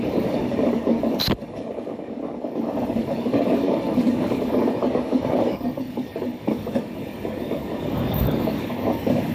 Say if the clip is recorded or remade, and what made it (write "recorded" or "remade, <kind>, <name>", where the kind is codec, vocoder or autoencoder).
remade, codec, DAC